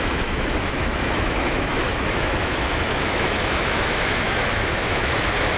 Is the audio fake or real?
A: fake